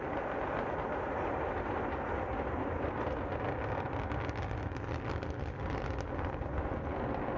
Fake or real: real